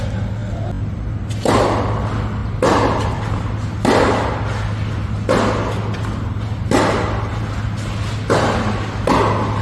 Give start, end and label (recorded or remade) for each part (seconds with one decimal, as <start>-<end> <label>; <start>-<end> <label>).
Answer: 0.0-9.6 recorded